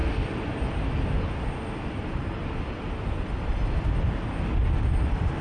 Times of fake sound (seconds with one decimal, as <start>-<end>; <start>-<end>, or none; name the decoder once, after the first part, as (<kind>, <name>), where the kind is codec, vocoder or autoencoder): none